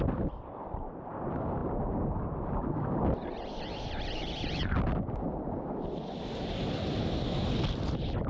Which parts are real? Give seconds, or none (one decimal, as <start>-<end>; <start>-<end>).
0.0-8.3